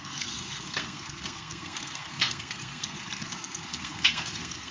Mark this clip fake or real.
fake